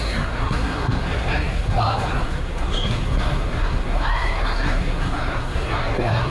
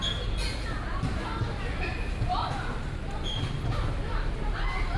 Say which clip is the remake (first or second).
first